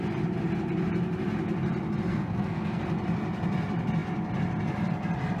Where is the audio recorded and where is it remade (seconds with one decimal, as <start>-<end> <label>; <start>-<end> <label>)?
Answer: 0.0-2.1 recorded; 2.1-2.8 remade; 2.8-5.4 recorded